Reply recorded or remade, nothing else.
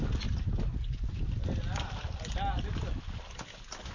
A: recorded